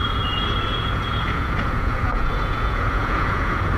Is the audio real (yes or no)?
no